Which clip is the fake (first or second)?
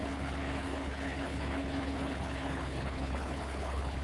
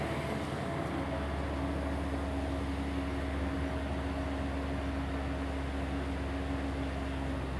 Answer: first